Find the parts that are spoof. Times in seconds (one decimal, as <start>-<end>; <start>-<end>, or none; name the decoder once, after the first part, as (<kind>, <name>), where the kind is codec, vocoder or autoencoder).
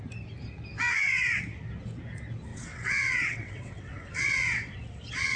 2.5-4.8 (vocoder, WaveNeXt)